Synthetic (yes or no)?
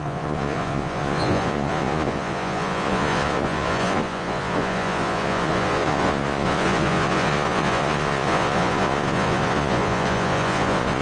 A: yes